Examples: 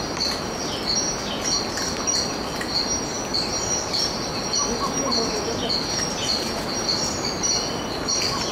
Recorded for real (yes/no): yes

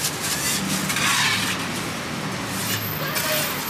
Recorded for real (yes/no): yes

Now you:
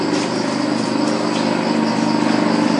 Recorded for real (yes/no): yes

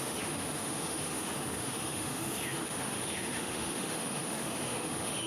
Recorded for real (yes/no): no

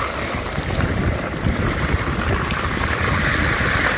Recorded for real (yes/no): yes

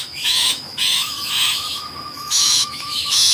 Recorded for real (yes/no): no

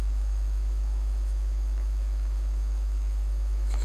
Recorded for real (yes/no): no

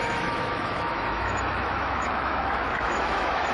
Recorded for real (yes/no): no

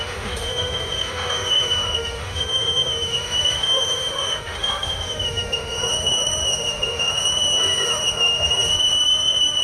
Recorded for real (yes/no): no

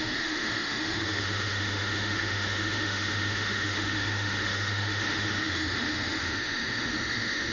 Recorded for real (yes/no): no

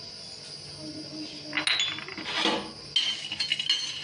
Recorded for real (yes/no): yes